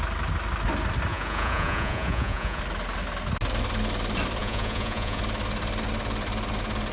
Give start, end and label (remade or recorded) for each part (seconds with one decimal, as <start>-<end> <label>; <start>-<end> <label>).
0.0-1.1 recorded; 1.1-2.6 remade; 2.6-4.4 recorded; 4.4-5.2 remade; 5.2-6.9 recorded